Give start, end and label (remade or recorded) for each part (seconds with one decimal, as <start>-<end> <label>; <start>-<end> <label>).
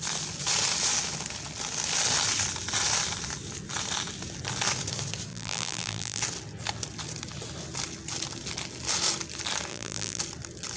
0.0-5.3 recorded; 5.3-6.2 remade; 6.2-9.7 recorded; 9.7-10.2 remade; 10.2-10.8 recorded